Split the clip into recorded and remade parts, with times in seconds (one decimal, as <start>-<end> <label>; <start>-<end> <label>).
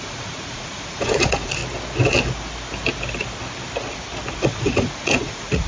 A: 0.0-1.6 remade; 1.6-4.4 recorded; 4.4-5.7 remade